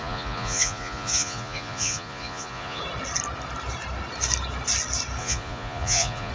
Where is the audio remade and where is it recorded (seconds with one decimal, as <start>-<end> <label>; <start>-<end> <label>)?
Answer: 0.0-2.8 remade; 2.8-5.2 recorded; 5.2-6.3 remade